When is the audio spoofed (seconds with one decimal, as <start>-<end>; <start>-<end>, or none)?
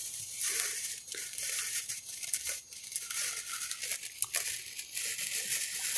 0.0-3.3